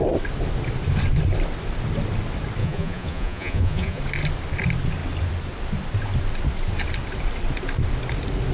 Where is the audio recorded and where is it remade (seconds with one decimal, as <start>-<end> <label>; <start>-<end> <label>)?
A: 0.0-2.6 recorded; 2.6-4.0 remade; 4.0-8.5 recorded